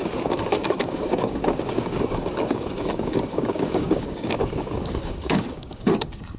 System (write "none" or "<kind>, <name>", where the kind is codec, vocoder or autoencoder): codec, DAC